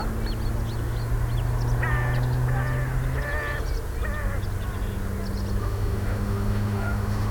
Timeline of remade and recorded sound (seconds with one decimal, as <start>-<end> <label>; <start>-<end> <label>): 0.0-5.6 recorded; 5.6-7.3 remade